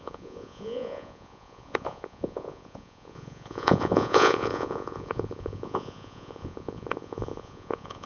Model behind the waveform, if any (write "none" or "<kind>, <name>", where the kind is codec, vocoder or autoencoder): vocoder, Vocos